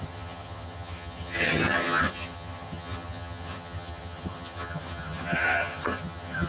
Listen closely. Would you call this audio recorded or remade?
remade